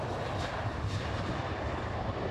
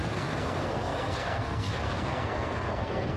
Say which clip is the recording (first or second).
first